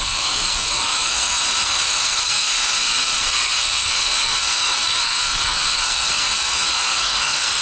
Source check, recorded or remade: remade